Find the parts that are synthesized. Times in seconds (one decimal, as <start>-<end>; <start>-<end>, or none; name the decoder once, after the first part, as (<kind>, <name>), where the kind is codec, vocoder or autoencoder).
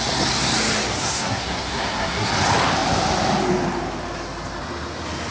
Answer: 1.0-2.3 (codec, SNAC)